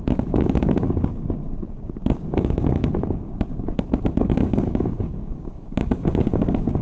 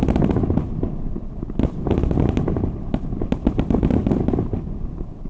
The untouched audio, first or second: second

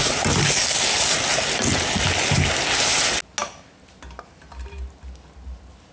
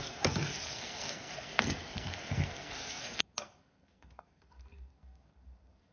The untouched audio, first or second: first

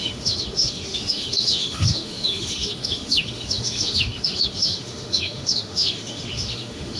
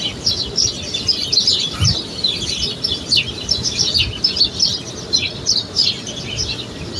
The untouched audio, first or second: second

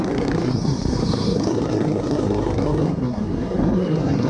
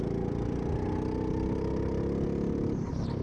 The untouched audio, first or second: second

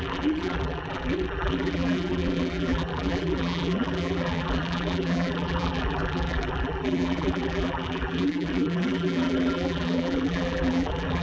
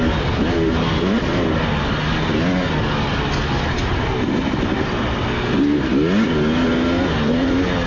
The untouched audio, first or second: second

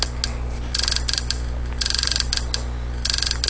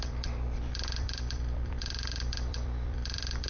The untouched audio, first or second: first